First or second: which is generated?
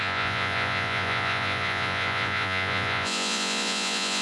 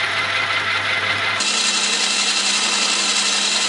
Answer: first